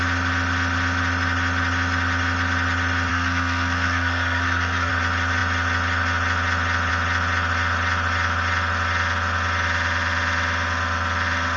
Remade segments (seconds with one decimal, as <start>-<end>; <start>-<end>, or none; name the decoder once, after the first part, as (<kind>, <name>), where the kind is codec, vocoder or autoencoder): 3.1-4.9 (codec, SNAC)